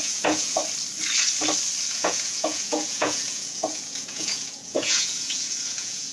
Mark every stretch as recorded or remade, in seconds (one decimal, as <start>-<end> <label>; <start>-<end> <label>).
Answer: 0.0-0.6 remade; 0.6-1.9 recorded; 1.9-6.1 remade